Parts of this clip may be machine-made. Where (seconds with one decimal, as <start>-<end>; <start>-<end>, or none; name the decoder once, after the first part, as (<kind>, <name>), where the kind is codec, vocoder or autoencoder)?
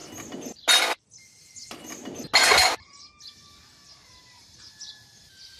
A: 0.8-2.0 (vocoder, BigVGAN v2); 4.3-5.6